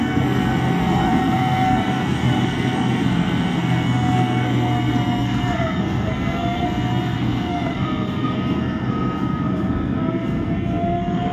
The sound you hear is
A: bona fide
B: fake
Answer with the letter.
B